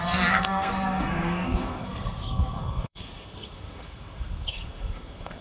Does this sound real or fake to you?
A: fake